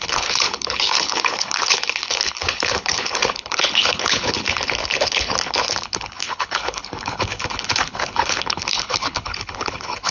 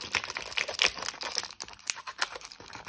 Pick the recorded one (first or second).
second